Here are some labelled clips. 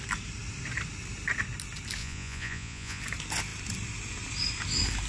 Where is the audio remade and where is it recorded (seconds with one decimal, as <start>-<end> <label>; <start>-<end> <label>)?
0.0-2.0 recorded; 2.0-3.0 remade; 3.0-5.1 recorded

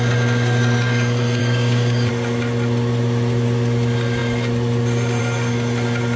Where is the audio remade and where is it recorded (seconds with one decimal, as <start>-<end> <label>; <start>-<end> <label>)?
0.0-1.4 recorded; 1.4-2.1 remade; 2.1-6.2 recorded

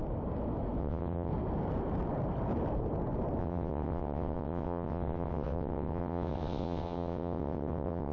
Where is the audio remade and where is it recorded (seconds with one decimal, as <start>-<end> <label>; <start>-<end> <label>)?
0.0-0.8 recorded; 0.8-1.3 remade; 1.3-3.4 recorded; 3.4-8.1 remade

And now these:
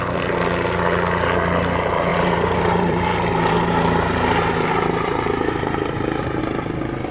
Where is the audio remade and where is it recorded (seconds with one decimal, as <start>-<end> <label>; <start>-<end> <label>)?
0.0-2.1 recorded; 2.1-6.4 remade; 6.4-7.1 recorded